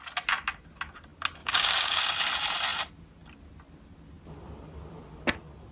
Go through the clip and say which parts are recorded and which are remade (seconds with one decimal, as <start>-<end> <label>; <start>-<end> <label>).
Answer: 0.0-1.4 recorded; 1.4-2.0 remade; 2.0-5.7 recorded